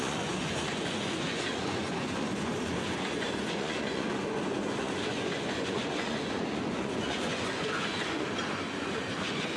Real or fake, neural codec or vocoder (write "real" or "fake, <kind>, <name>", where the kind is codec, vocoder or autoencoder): fake, vocoder, Vocos